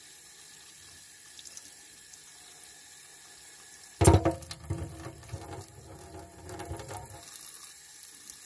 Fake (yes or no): no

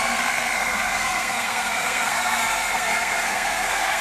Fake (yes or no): yes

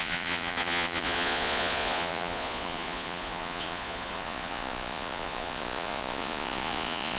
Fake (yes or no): yes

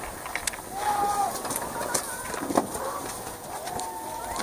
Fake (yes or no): no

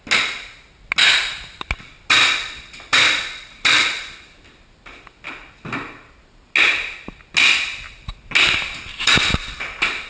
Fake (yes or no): no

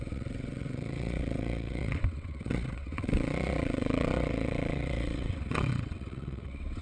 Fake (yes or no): yes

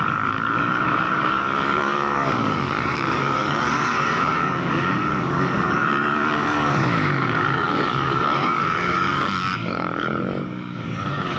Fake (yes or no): yes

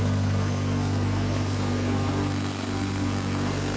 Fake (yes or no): yes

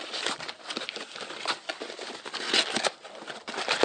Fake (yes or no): no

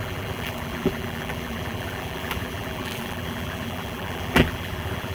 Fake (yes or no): yes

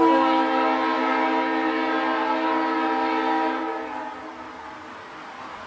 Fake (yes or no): no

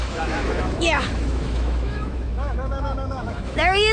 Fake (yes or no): yes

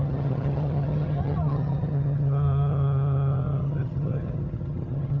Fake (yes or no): yes